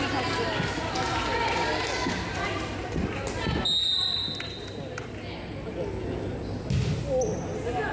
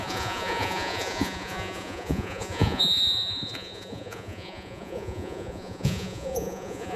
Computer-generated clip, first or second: second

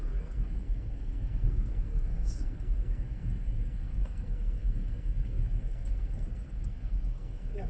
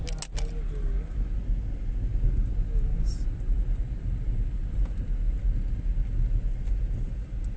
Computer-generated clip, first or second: first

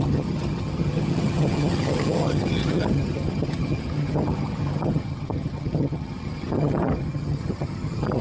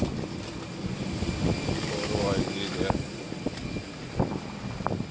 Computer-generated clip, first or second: first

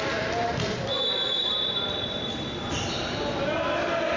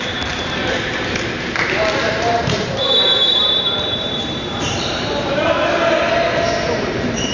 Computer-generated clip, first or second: second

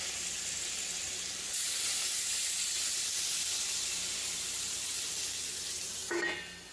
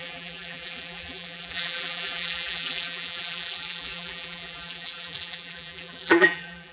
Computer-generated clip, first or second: second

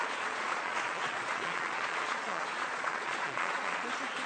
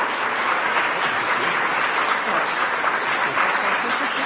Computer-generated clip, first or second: first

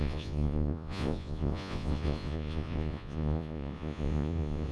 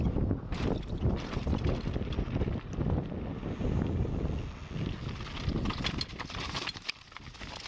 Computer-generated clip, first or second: first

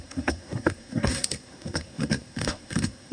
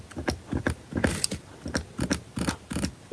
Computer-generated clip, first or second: first